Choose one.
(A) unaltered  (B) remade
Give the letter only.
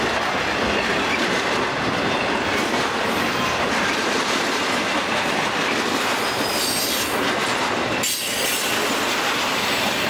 A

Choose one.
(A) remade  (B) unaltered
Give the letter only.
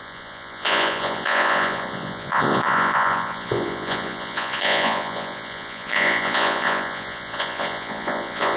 A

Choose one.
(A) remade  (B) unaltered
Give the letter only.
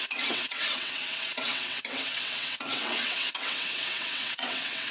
A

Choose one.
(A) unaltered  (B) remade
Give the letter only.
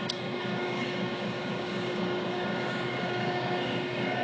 B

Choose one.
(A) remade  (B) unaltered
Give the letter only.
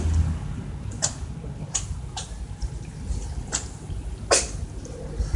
B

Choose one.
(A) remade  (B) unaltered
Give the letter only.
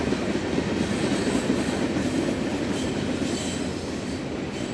B